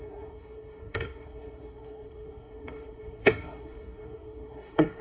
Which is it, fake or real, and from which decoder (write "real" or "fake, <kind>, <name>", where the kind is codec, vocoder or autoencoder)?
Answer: fake, codec, SNAC